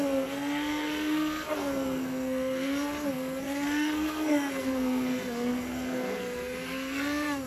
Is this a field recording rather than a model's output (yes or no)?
no